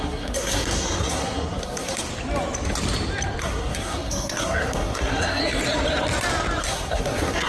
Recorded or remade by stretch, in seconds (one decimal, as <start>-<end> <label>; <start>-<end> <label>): 0.0-2.1 remade; 2.1-3.4 recorded; 3.4-5.4 remade; 5.4-6.6 recorded; 6.6-7.5 remade